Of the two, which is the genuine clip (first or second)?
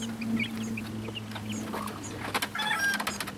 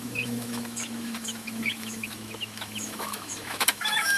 first